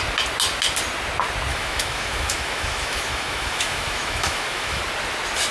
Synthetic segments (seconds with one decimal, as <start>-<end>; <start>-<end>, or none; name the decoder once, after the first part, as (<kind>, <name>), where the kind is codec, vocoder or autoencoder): 1.5-4.8 (autoencoder, DAC-VAE)